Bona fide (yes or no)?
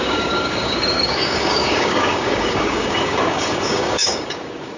no